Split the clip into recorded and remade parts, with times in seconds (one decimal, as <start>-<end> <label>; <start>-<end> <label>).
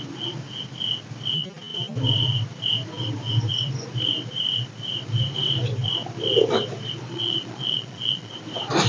0.0-7.1 recorded; 7.1-8.3 remade; 8.3-8.9 recorded